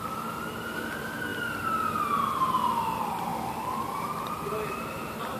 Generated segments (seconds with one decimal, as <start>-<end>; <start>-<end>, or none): 0.0-1.3; 2.8-3.3; 4.0-5.4